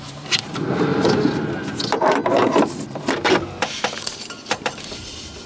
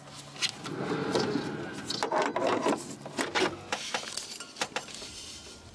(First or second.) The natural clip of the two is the second